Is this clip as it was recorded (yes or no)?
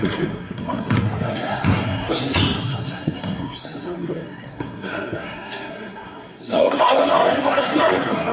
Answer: no